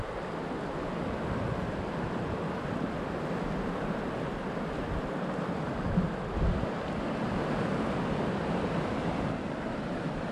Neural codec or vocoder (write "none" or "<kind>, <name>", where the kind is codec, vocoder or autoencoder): none